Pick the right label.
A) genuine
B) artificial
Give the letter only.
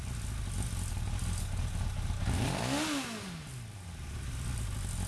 A